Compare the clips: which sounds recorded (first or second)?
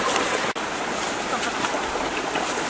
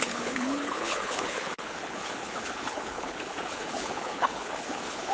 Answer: first